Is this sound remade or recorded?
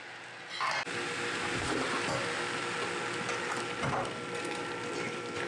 recorded